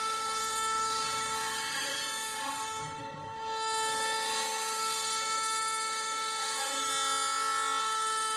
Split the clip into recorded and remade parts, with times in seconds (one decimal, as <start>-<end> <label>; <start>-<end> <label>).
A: 0.0-6.9 remade; 6.9-7.8 recorded; 7.8-8.4 remade